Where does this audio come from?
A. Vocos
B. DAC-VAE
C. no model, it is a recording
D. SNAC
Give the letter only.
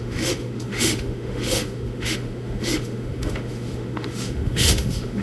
B